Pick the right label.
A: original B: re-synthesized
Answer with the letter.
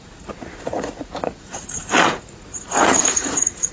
B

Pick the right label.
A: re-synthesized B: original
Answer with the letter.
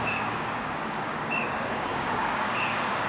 A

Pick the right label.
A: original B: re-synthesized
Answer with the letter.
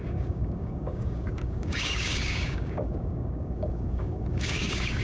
B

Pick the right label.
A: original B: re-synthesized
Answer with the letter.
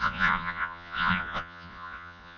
B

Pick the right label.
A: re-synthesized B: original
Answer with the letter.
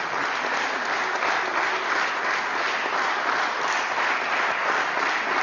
B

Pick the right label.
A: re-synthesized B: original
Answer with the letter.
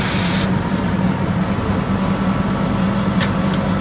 B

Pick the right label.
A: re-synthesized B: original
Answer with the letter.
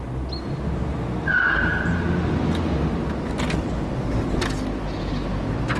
B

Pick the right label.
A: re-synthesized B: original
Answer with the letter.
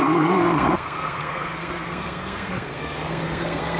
A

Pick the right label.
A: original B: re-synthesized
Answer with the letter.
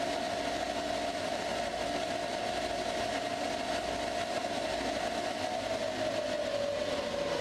A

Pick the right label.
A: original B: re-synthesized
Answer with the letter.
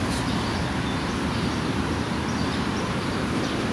A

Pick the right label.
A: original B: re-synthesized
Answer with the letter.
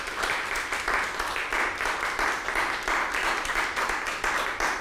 B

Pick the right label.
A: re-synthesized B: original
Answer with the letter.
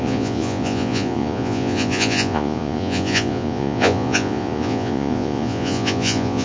A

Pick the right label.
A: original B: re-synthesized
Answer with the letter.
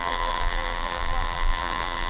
B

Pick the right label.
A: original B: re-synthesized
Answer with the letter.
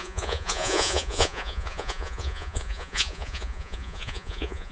B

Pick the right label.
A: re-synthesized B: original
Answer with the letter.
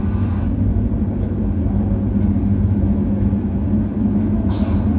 B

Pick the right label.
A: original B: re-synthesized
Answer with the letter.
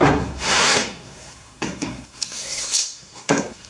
B